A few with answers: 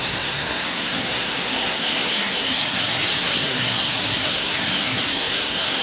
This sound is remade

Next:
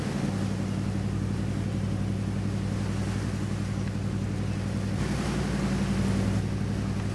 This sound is recorded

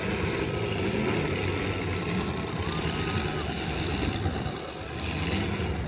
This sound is recorded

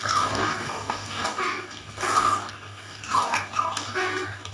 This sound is remade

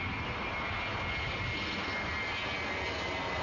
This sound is recorded